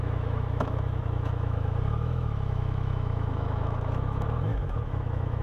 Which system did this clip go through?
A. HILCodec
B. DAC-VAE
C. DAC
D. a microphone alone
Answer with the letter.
B